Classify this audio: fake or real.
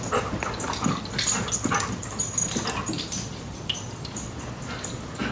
real